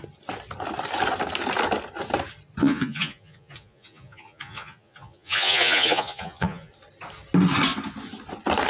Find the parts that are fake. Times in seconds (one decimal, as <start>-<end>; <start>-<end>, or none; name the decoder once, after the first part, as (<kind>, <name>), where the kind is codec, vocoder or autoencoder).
2.6-6.7 (vocoder, Vocos)